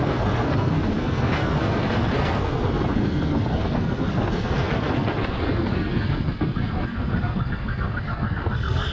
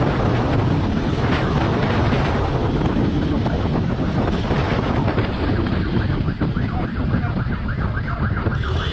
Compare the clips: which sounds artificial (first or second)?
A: first